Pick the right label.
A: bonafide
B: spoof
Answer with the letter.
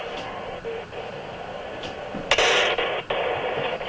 A